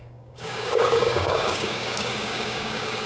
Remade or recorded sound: remade